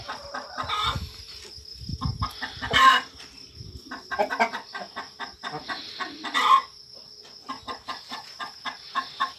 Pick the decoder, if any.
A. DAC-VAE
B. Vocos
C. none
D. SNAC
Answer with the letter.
C